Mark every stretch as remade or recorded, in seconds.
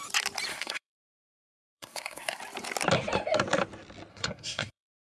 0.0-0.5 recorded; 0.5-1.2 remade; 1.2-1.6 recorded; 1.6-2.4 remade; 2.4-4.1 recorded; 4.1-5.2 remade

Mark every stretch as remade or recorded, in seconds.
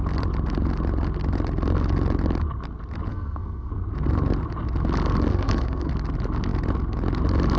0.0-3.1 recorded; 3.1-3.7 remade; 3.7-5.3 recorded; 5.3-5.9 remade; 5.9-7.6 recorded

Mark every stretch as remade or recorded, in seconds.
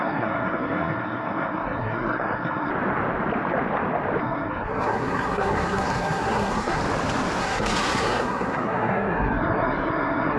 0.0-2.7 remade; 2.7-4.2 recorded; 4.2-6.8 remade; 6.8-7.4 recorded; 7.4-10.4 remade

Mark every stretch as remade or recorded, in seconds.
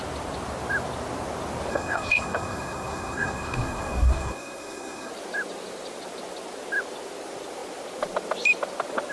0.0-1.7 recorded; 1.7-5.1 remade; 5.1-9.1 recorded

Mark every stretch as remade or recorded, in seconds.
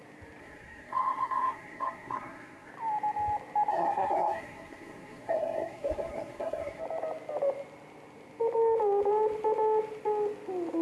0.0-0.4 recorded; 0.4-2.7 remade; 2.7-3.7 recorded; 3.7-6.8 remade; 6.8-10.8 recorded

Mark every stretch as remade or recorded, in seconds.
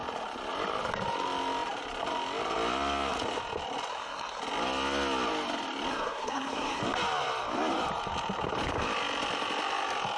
0.0-3.9 recorded; 3.9-4.4 remade; 4.4-5.9 recorded; 5.9-6.8 remade; 6.8-10.2 recorded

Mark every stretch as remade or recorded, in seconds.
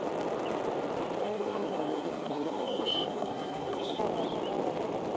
0.0-1.2 recorded; 1.2-4.0 remade; 4.0-5.2 recorded